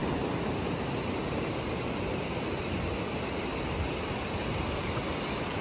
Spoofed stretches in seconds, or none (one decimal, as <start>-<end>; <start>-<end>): none